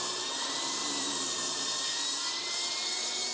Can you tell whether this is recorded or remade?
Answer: remade